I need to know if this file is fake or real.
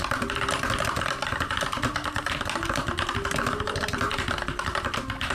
real